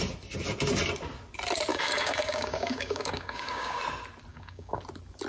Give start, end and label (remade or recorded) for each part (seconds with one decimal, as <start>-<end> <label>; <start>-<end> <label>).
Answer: 0.0-1.7 recorded; 1.7-3.8 remade; 3.8-4.3 recorded; 4.3-4.8 remade; 4.8-5.3 recorded